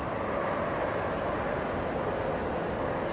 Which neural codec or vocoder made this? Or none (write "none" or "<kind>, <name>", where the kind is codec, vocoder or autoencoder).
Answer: none